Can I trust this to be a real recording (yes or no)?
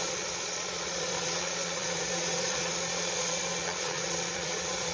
no